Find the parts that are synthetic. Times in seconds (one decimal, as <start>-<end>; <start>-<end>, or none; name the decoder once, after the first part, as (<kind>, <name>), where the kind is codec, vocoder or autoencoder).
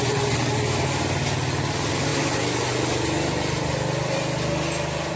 none